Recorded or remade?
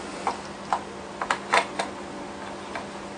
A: recorded